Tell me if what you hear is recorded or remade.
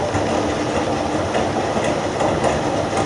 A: recorded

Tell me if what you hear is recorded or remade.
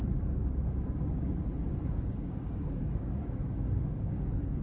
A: remade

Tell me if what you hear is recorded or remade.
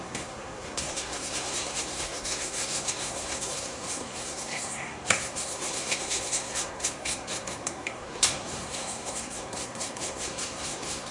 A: remade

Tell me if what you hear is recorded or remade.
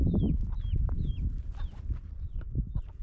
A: recorded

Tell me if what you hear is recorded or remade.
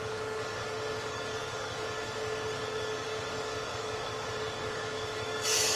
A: remade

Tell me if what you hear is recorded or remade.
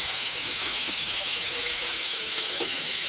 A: remade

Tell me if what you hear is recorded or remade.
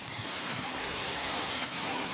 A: remade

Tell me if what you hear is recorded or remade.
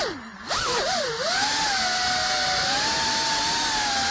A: recorded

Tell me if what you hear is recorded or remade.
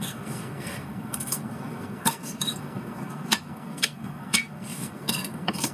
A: remade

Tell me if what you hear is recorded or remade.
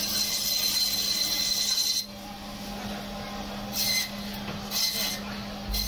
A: recorded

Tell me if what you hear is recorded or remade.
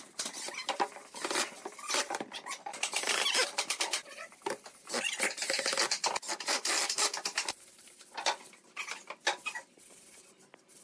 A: recorded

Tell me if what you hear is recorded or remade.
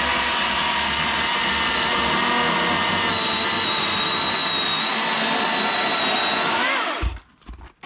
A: recorded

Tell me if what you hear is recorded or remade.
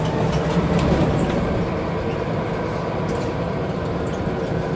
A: recorded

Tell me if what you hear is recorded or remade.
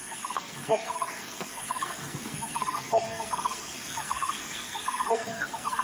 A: remade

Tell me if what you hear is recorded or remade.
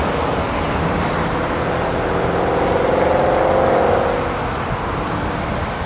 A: recorded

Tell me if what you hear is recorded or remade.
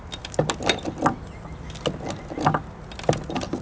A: recorded